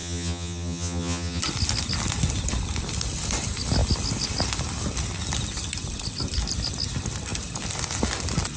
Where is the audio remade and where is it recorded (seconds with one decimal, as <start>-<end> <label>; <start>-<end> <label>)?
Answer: 0.0-1.4 remade; 1.4-8.6 recorded